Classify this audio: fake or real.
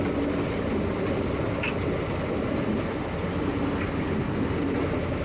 real